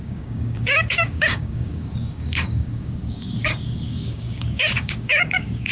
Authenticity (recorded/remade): remade